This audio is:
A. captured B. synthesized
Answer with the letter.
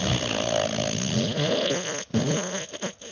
A